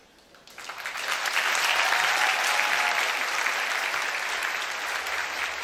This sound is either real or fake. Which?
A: real